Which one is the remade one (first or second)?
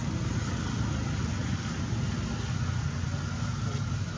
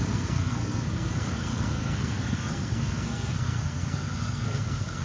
second